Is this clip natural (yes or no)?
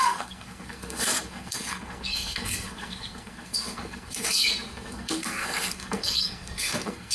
no